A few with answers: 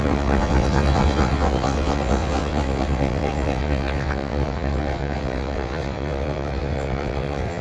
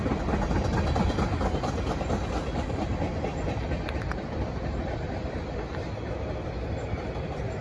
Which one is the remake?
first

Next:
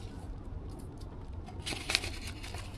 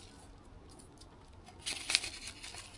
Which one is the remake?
first